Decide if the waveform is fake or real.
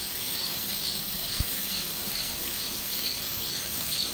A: fake